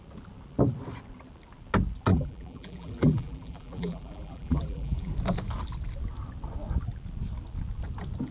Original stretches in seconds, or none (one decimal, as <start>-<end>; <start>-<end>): 0.0-2.1; 5.1-8.3